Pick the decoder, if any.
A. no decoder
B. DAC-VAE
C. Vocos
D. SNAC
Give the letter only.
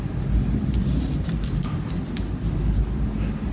A